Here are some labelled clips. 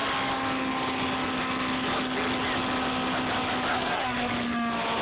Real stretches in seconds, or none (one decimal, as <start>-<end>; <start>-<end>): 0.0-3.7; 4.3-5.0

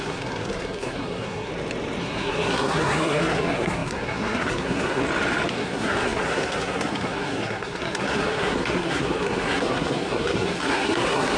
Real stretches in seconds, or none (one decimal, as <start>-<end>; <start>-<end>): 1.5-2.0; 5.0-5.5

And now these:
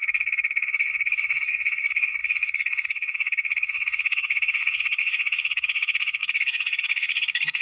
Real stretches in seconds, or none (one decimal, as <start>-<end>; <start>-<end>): none

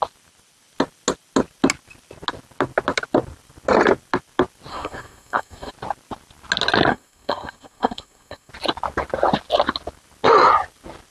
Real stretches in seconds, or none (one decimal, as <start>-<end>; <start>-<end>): 0.0-4.7; 5.7-6.9; 8.5-11.1